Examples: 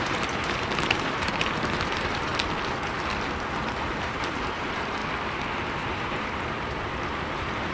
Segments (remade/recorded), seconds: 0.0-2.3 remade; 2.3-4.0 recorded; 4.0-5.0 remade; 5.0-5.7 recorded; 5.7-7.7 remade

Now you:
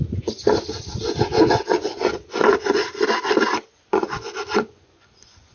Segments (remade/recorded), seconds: 0.0-0.4 remade; 0.4-1.0 recorded; 1.0-2.8 remade; 2.8-3.7 recorded; 3.7-5.5 remade

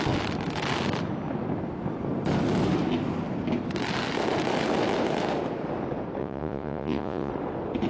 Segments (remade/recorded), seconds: 0.0-6.2 recorded; 6.2-7.3 remade; 7.3-7.9 recorded

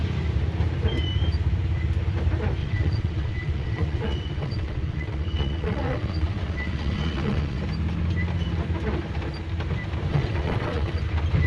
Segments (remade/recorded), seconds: 0.0-2.6 recorded; 2.6-7.6 remade; 7.6-10.1 recorded; 10.1-11.0 remade; 11.0-11.5 recorded

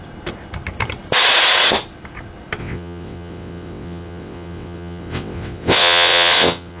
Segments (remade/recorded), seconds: 0.0-2.6 recorded; 2.6-6.8 remade